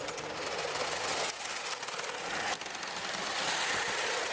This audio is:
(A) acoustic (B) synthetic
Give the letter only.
A